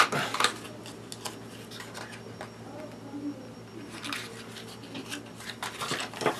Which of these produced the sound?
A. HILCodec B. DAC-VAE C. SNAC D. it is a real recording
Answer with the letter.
D